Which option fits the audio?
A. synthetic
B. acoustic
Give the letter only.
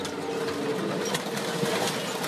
B